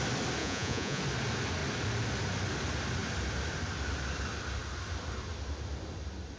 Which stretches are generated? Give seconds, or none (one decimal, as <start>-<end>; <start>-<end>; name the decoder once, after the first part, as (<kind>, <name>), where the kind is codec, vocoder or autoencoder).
0.4-1.0 (vocoder, Vocos)